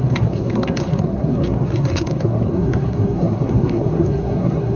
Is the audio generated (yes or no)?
yes